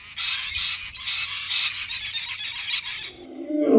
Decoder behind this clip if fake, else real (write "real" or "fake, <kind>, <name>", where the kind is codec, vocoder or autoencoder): real